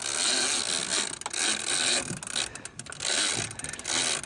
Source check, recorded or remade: recorded